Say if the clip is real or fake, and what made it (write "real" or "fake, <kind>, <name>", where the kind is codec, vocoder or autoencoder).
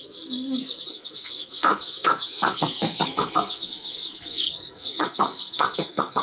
fake, codec, SNAC